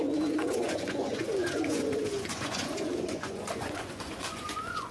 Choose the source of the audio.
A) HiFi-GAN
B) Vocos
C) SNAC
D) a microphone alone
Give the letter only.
B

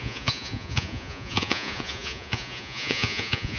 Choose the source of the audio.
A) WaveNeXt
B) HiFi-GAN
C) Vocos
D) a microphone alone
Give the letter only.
C